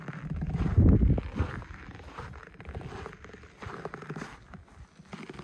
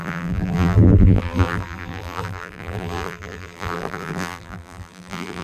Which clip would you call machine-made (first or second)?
second